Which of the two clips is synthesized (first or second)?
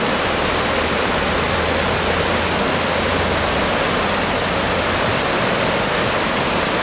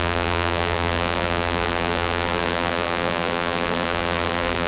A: second